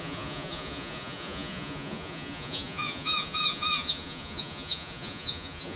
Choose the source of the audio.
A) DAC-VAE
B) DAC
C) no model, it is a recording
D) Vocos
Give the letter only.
D